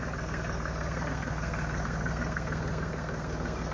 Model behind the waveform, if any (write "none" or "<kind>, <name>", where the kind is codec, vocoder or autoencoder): codec, SNAC